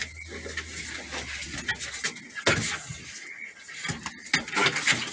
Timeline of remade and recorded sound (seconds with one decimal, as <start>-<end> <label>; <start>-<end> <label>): 0.0-5.1 recorded